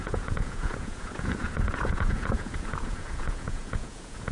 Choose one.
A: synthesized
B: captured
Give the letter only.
A